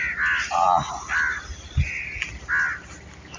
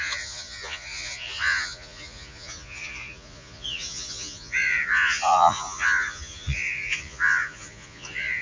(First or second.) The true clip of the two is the first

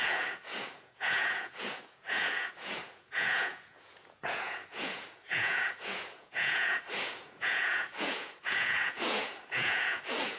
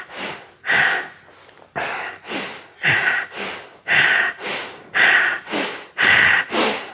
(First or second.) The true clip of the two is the second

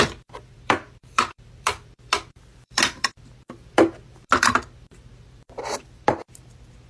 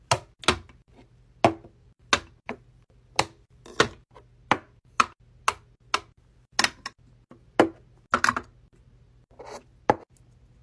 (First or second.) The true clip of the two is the second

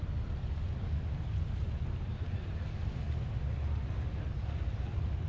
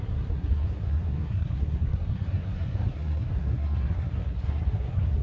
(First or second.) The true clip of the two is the first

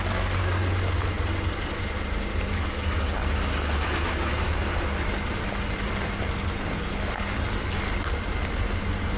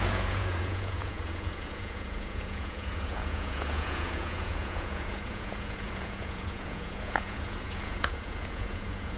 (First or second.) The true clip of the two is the first